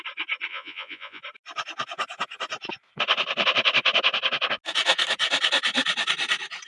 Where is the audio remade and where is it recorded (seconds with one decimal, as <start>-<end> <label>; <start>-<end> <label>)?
0.0-0.5 recorded; 0.5-1.2 remade; 1.2-6.7 recorded